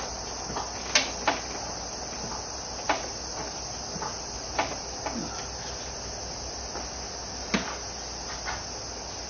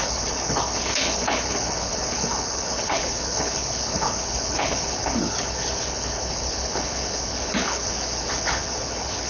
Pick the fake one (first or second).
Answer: second